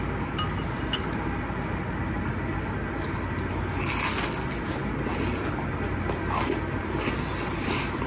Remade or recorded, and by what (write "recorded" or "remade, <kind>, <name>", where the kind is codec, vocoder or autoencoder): recorded